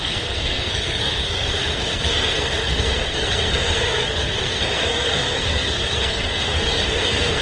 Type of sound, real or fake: fake